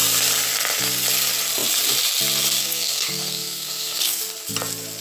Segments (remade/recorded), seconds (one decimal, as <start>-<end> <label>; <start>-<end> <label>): 0.0-2.6 recorded; 2.6-4.2 remade; 4.2-5.0 recorded